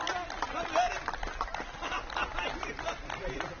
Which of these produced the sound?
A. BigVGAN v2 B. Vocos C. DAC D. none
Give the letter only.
D